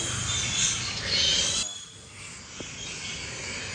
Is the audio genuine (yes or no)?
yes